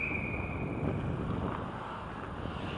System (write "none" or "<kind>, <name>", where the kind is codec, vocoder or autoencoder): none